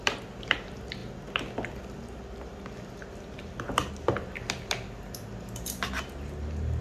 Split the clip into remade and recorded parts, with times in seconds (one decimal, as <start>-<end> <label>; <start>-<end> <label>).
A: 0.0-6.8 recorded